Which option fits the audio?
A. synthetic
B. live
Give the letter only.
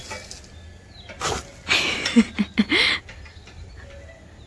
B